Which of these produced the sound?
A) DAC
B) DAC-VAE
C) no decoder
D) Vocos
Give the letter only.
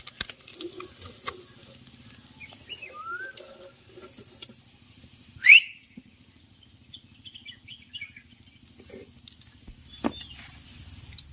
C